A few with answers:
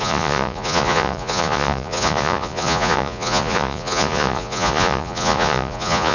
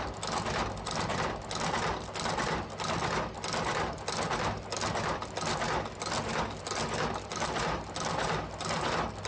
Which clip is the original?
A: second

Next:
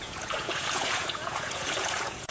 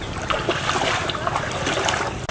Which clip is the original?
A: second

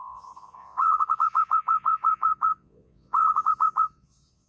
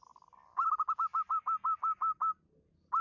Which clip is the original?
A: second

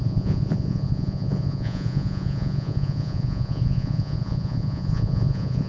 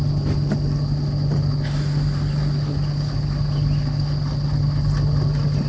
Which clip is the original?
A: second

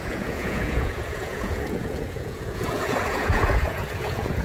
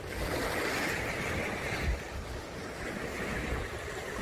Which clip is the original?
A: second